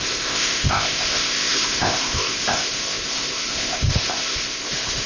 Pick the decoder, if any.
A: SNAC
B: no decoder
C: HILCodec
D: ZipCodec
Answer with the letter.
D